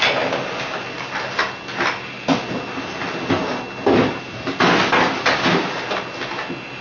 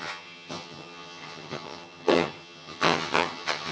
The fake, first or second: second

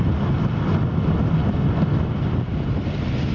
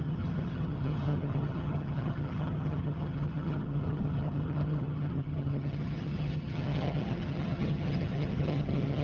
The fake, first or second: second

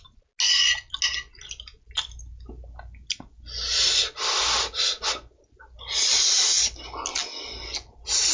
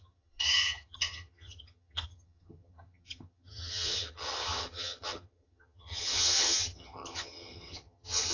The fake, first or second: second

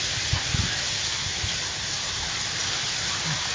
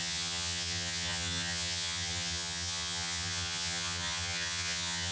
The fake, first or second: second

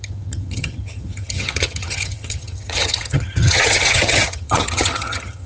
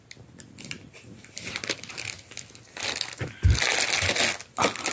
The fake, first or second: first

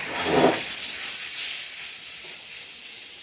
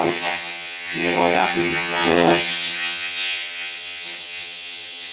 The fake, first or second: second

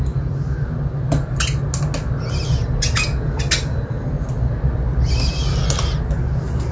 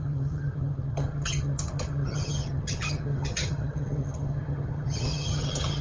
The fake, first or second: second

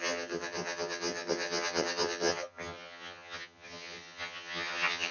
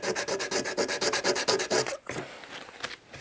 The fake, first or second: first